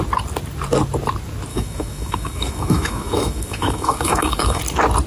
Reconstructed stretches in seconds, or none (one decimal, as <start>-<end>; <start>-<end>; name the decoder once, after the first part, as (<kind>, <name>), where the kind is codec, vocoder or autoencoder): 1.5-4.6 (autoencoder, DAC-VAE)